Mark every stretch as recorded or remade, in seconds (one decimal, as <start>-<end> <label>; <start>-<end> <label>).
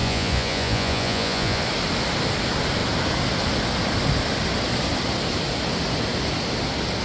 0.0-1.6 remade; 1.6-7.0 recorded